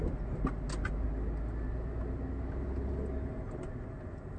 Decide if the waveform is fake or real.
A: real